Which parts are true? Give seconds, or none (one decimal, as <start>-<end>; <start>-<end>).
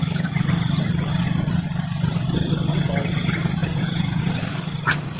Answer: 0.0-3.6; 4.2-5.2